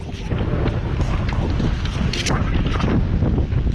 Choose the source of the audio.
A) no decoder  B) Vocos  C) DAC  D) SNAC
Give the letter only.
A